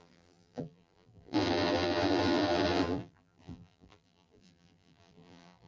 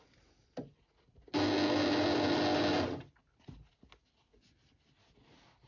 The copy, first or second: first